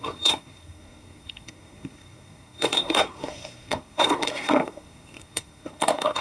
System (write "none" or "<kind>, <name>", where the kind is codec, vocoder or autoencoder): codec, SNAC